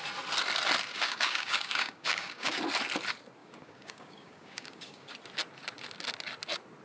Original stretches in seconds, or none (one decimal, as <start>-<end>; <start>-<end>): 0.0-0.9; 2.6-3.4; 5.1-6.8